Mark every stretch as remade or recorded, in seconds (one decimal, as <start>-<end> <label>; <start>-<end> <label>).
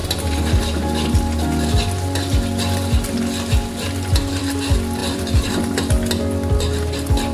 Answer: 0.0-5.0 recorded; 5.0-5.9 remade; 5.9-7.3 recorded